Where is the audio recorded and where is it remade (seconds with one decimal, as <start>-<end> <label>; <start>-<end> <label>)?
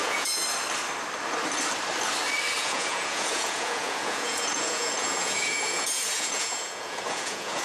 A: 0.0-0.4 remade; 0.4-2.6 recorded; 2.6-7.6 remade